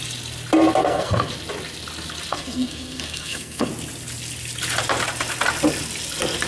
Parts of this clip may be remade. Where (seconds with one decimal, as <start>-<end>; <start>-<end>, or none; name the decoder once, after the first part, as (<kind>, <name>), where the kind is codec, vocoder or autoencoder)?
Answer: 0.8-1.3 (codec, SNAC); 2.3-3.7